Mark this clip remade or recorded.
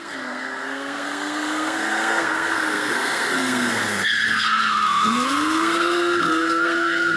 remade